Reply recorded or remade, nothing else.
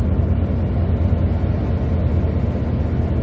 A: recorded